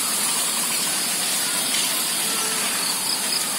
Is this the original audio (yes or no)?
no